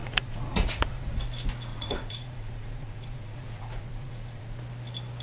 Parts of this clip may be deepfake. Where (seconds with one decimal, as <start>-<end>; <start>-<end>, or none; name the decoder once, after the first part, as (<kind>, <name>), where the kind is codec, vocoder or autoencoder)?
0.0-1.2 (vocoder, Vocos); 1.7-4.6